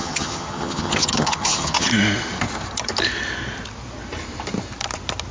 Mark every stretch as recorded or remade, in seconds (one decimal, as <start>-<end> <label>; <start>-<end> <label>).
0.0-1.9 remade; 1.9-5.3 recorded

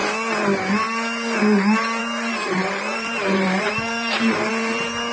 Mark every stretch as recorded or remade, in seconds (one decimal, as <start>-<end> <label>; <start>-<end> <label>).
0.0-2.0 recorded; 2.0-4.5 remade; 4.5-5.1 recorded

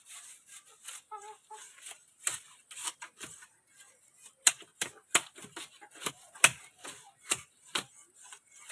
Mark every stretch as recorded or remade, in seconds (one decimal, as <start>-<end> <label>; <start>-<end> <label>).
0.0-8.7 recorded